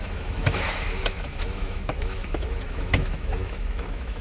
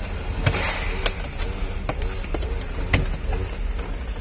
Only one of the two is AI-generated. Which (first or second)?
first